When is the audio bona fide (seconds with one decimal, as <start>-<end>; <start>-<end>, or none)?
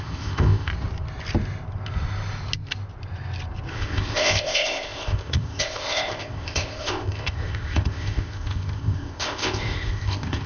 0.7-3.7